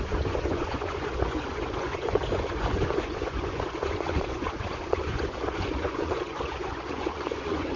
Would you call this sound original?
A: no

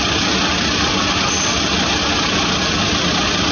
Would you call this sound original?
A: yes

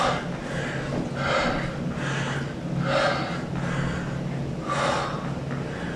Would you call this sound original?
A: yes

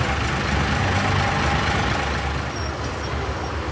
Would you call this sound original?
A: yes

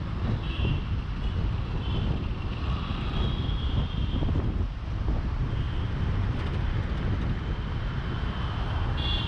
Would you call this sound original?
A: yes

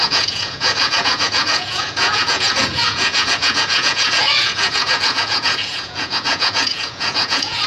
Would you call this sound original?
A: no